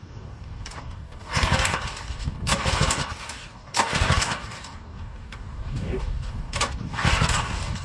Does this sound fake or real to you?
fake